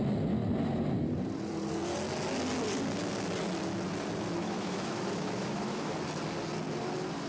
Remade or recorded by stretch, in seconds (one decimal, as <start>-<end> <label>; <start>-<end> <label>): 0.0-4.4 recorded; 4.4-5.9 remade; 5.9-7.3 recorded